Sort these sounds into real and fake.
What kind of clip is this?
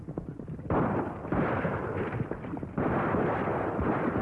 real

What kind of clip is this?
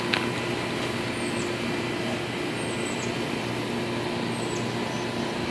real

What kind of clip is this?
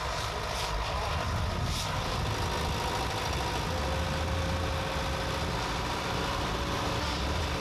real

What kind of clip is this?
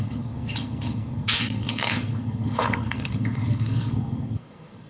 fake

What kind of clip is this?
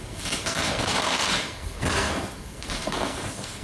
fake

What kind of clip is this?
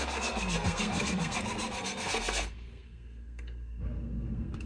fake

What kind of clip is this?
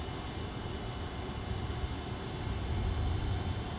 real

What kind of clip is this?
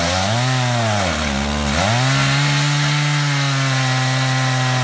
real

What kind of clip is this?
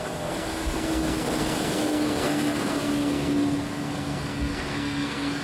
fake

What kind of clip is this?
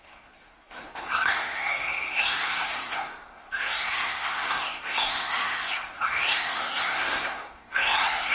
fake